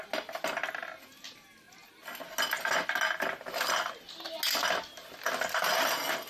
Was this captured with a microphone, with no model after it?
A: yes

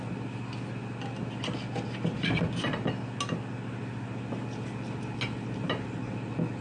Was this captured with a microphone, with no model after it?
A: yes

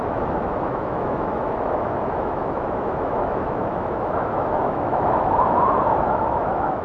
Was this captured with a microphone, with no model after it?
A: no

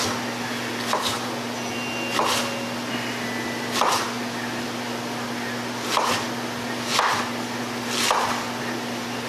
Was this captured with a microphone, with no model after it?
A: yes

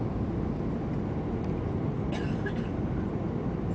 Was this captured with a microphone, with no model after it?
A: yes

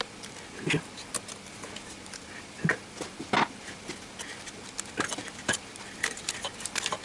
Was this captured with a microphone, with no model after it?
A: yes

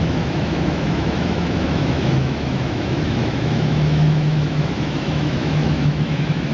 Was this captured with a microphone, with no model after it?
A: no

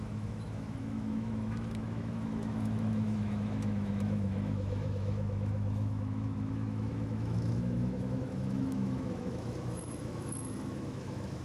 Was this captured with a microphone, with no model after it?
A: no